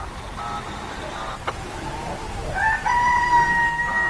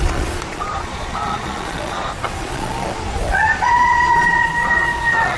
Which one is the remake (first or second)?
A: second